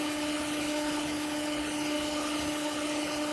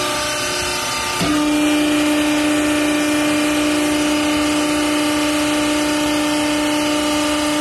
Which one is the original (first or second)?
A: second